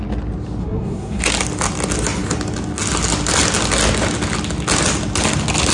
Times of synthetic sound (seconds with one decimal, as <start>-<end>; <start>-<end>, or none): 0.6-1.2